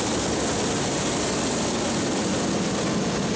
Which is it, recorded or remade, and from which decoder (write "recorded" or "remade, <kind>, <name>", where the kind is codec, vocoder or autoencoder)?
recorded